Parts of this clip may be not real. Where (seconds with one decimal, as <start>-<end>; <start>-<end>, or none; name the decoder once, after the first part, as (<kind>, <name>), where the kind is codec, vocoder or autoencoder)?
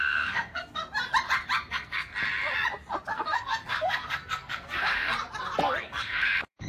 0.0-0.8 (codec, SNAC); 1.7-2.1; 3.1-5.1; 5.8-6.7